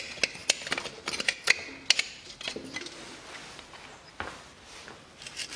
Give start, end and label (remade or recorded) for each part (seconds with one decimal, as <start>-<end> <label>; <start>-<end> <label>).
0.0-5.6 recorded